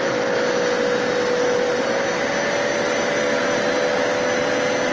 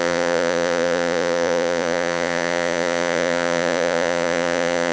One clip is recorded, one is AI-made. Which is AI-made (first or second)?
second